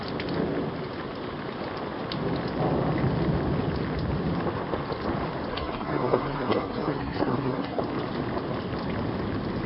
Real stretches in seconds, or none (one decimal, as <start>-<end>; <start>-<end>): 0.0-5.5; 7.8-9.7